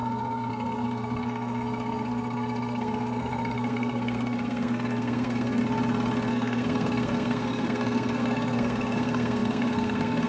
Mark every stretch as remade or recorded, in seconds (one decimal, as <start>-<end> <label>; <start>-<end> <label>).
0.0-5.6 remade; 5.6-6.3 recorded; 6.3-10.3 remade